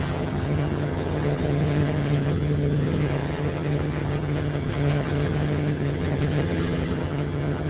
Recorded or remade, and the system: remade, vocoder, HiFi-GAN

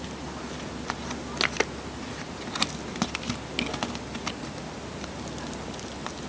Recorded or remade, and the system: recorded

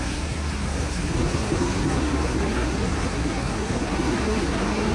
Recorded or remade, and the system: remade, codec, SNAC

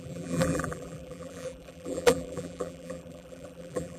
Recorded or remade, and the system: remade, vocoder, BigVGAN v2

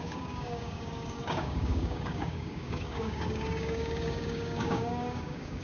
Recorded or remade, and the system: remade, codec, DAC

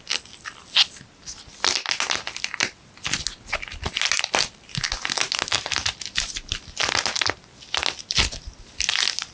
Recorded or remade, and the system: recorded